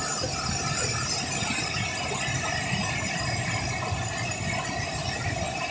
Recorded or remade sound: recorded